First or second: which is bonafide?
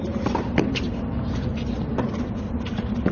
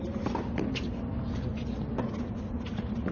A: second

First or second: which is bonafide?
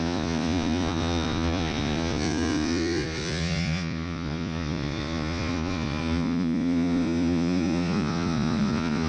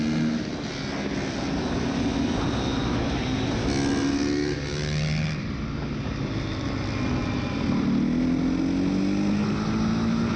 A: second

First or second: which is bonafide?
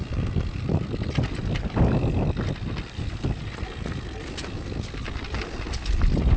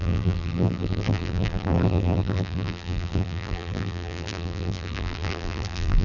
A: first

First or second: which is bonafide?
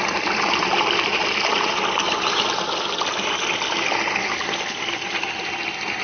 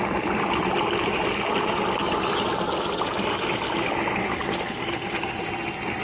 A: second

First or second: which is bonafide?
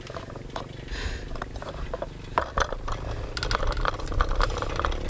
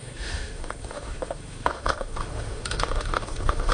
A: first